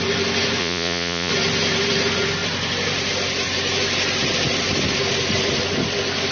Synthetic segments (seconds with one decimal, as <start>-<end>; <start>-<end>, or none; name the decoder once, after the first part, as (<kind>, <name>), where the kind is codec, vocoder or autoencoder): 0.6-1.3 (vocoder, Vocos)